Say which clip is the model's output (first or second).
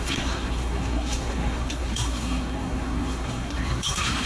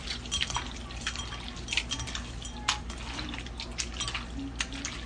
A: first